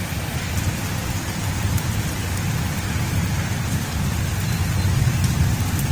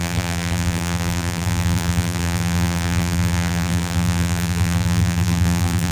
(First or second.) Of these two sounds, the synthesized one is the second